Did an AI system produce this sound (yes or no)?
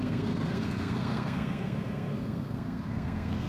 yes